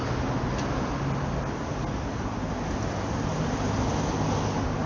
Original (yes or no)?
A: yes